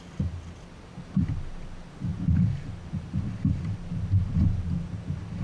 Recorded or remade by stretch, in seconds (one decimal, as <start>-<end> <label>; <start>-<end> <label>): 0.0-5.4 recorded